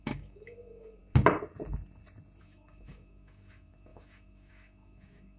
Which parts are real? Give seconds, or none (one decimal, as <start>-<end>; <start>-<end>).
1.0-2.4